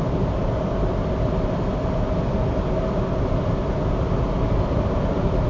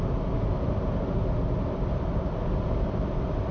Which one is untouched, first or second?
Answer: second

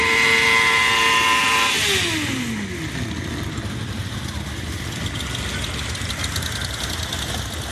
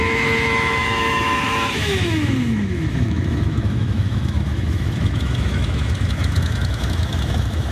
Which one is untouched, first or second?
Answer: first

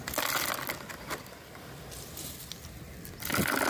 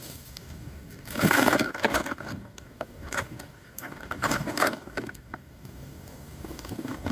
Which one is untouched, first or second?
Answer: first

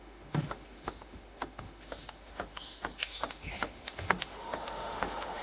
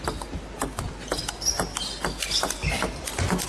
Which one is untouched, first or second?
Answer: second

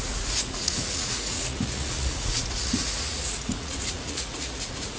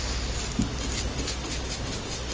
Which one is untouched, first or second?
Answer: second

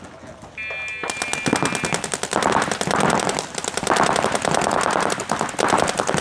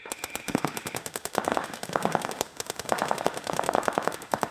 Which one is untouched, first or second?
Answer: first